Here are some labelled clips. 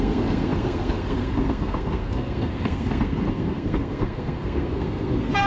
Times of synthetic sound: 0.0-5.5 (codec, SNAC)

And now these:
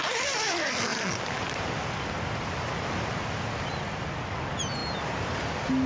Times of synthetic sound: none

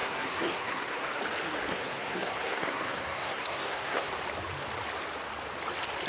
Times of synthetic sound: 0.0-1.1 (codec, SNAC); 1.7-4.1

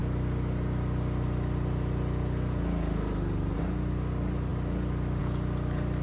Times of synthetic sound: none

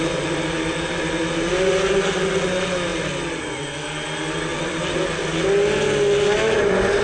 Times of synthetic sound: none

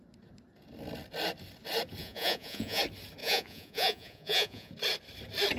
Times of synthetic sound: 2.0-2.8 (vocoder, Vocos); 3.2-4.7

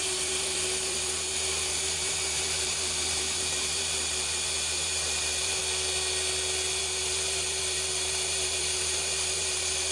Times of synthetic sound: 0.0-5.6 (vocoder, BigVGAN v2); 6.8-9.9

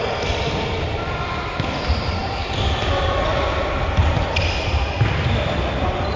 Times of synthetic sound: none